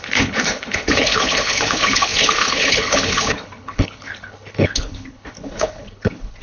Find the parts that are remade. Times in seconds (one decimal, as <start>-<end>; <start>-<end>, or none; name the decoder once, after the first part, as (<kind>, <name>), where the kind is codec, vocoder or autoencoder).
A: 0.0-6.4 (codec, HILCodec)